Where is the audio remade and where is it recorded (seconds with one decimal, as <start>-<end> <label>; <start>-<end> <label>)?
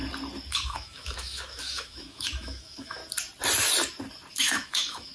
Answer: 0.0-0.5 recorded; 0.5-3.0 remade; 3.0-4.3 recorded; 4.3-5.1 remade